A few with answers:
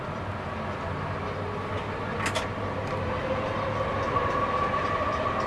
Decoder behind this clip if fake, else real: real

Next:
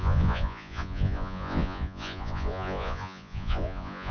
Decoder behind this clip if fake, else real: fake, vocoder, Vocos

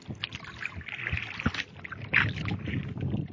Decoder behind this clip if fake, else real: real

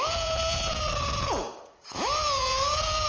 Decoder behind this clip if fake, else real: fake, vocoder, Vocos